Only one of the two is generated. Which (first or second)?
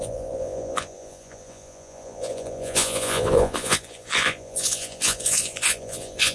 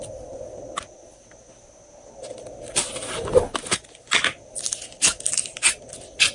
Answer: first